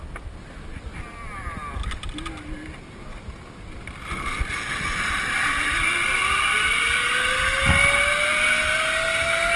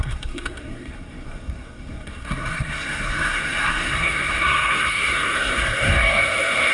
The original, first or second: first